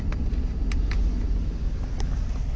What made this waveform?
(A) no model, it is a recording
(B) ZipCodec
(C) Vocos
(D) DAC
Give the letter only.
A